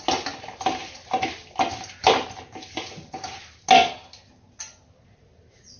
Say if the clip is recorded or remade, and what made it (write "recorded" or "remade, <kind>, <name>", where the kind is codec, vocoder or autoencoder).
recorded